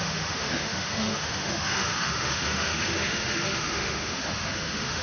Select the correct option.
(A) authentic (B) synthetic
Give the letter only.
B